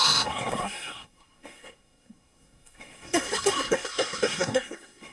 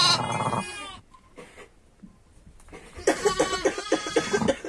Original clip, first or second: second